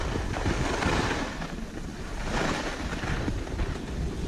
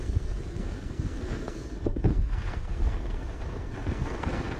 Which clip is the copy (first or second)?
second